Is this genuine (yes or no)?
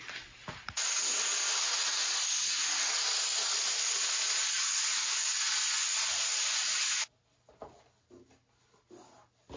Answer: yes